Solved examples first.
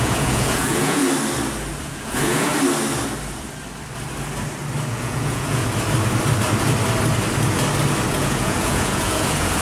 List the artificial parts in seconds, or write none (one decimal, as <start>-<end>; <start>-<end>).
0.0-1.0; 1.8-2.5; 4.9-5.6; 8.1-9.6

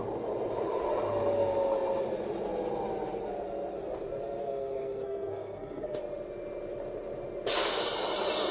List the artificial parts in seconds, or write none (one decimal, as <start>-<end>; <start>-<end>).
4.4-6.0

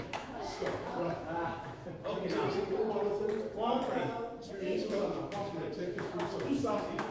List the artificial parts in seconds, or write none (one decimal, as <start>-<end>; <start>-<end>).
0.0-1.8; 4.5-7.1

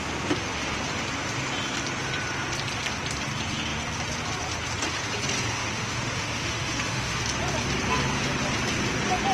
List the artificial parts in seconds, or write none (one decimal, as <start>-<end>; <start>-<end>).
5.6-7.2

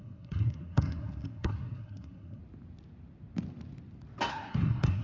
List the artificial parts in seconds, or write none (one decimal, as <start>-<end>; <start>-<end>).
0.0-2.4; 4.3-5.0

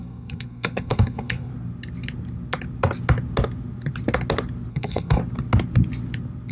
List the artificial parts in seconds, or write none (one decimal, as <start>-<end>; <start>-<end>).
0.0-1.5; 4.7-5.2

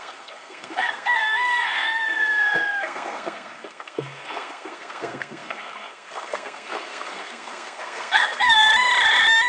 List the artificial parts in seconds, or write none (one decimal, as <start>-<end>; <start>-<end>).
0.0-8.7